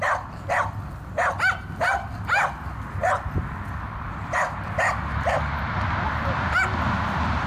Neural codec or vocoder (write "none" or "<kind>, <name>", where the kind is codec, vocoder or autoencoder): none